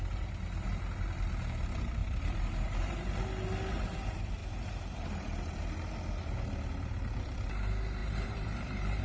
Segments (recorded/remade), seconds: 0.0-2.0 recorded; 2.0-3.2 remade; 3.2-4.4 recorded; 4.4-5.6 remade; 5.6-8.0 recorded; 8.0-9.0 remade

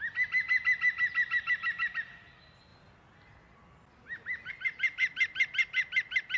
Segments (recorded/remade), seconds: 0.0-6.4 recorded

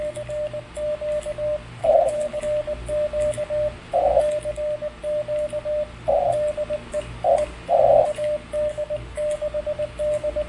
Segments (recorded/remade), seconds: 0.0-1.8 recorded; 1.8-2.4 remade; 2.4-10.5 recorded

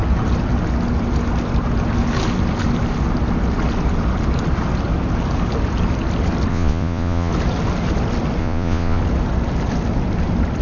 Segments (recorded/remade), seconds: 0.0-6.5 recorded; 6.5-7.3 remade; 7.3-8.4 recorded; 8.4-9.0 remade; 9.0-10.6 recorded

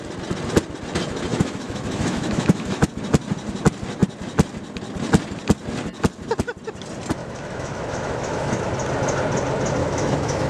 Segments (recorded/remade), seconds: 0.0-1.3 recorded; 1.3-2.9 remade; 2.9-7.2 recorded; 7.2-8.7 remade; 8.7-9.8 recorded; 9.8-10.5 remade